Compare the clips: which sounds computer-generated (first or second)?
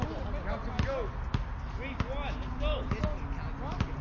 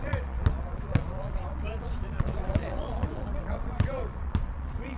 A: second